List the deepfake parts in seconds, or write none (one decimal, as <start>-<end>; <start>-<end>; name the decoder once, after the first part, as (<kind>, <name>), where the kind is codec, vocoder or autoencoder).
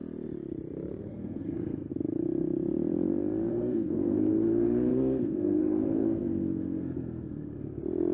0.9-1.9 (codec, SNAC); 3.5-7.6